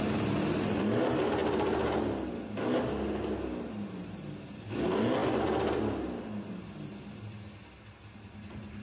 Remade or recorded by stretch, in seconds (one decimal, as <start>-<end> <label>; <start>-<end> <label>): 0.0-8.8 recorded